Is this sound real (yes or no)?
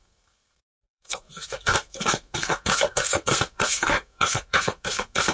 no